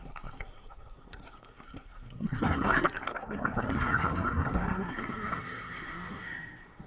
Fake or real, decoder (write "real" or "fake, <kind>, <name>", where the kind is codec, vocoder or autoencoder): fake, codec, SNAC